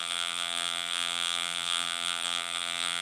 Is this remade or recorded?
remade